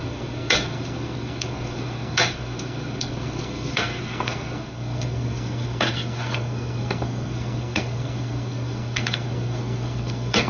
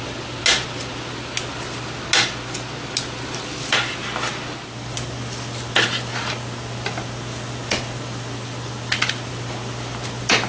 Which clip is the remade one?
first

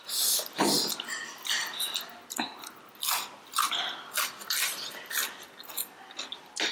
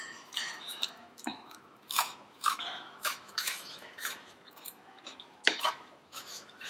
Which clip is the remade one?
second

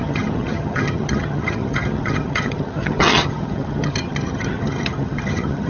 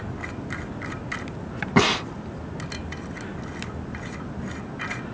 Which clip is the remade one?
first